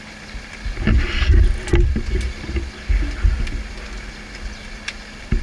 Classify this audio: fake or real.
real